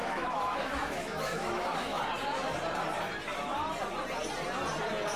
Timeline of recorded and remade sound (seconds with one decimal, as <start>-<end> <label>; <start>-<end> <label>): 0.0-2.0 remade; 2.0-5.2 recorded